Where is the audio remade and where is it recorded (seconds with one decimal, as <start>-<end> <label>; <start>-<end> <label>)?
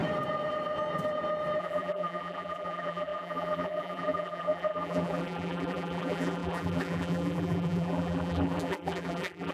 0.0-1.6 recorded; 1.6-9.5 remade